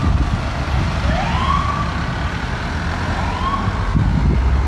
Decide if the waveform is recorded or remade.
recorded